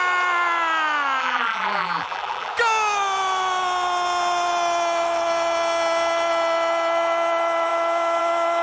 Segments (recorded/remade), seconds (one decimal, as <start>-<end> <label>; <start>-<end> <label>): 0.0-1.2 recorded; 1.2-2.5 remade; 2.5-8.6 recorded

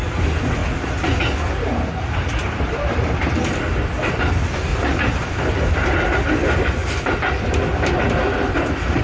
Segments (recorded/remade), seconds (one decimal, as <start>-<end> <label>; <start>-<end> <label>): 0.0-0.6 remade; 0.6-2.0 recorded; 2.0-4.7 remade; 4.7-5.3 recorded; 5.3-9.0 remade

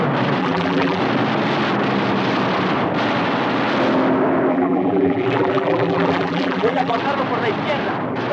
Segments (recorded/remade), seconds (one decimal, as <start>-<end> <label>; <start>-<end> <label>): 0.0-0.4 recorded; 0.4-1.0 remade; 1.0-4.5 recorded; 4.5-7.0 remade; 7.0-8.3 recorded

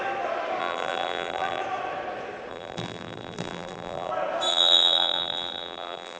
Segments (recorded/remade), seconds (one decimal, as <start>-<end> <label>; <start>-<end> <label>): 0.0-0.6 recorded; 0.6-1.6 remade; 1.6-2.5 recorded; 2.5-4.1 remade; 4.1-4.5 recorded; 4.5-6.2 remade

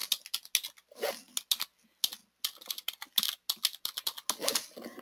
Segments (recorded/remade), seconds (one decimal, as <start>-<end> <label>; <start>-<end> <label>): 0.0-5.0 recorded

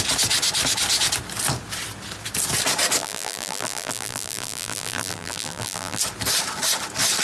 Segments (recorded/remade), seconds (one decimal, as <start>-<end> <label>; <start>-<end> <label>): 0.0-3.0 recorded; 3.0-6.0 remade; 6.0-7.2 recorded

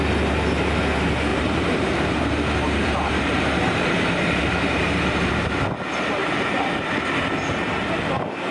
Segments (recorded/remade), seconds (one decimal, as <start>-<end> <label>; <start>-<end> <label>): 0.0-1.3 recorded; 1.3-5.5 remade; 5.5-8.5 recorded